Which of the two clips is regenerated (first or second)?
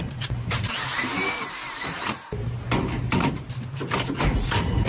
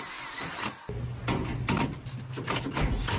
first